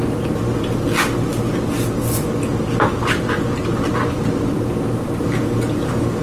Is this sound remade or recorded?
recorded